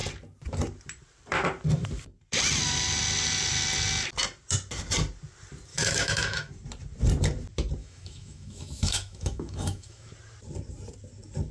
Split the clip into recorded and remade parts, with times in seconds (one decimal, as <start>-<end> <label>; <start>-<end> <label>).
0.0-5.7 recorded; 5.7-6.5 remade; 6.5-7.8 recorded; 7.8-10.1 remade; 10.1-11.5 recorded